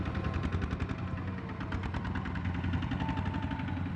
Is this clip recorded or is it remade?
recorded